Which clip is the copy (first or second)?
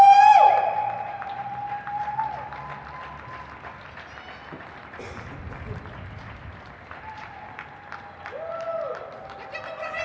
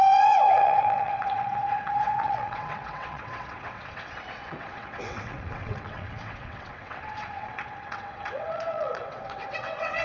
second